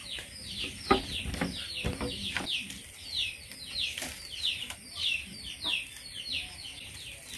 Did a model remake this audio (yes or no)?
no